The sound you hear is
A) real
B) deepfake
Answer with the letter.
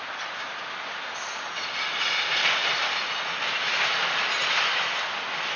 A